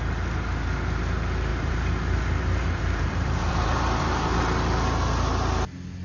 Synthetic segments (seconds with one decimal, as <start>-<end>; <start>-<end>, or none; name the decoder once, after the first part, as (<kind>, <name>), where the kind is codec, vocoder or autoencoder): 1.5-4.4 (vocoder, BigVGAN v2)